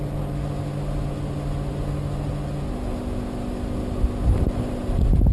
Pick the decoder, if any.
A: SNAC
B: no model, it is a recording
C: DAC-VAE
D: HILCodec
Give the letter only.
B